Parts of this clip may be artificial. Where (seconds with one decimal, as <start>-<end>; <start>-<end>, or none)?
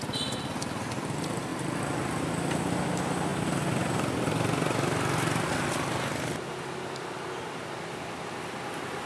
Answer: none